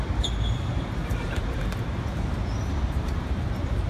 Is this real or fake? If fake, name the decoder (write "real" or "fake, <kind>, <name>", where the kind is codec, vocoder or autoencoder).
fake, vocoder, BigVGAN v2